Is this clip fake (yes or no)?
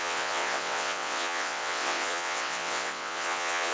yes